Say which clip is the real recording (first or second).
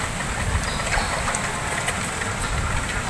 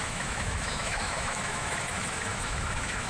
first